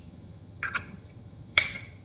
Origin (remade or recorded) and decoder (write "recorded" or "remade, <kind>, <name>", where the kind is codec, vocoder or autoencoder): remade, vocoder, HiFi-GAN